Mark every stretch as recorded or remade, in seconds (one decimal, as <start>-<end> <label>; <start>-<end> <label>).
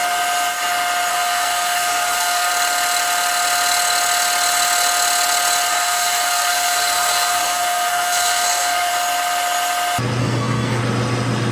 0.0-1.1 recorded; 1.1-2.5 remade; 2.5-5.7 recorded; 5.7-8.9 remade; 8.9-10.2 recorded; 10.2-10.8 remade; 10.8-11.5 recorded